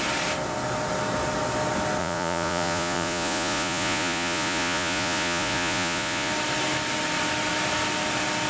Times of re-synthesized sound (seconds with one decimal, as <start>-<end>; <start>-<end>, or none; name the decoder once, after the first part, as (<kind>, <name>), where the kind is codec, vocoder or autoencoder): 2.0-6.3 (vocoder, Vocos)